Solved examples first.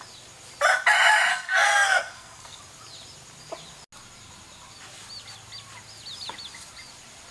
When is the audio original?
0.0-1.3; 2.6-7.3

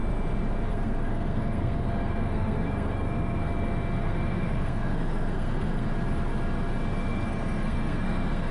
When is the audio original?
0.0-0.7; 3.4-4.0; 5.9-7.0

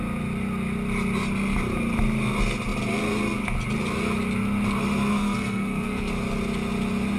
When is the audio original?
0.0-5.1; 6.1-7.2

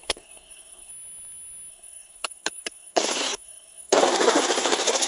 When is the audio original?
0.9-1.7